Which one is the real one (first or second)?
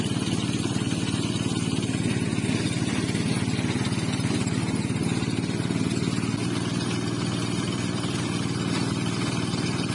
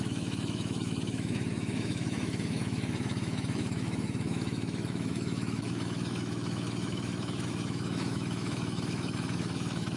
first